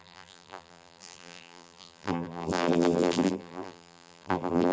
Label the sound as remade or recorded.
remade